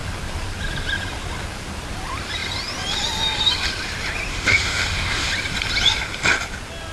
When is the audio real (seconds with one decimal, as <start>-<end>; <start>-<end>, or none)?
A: 0.0-4.3; 5.3-6.9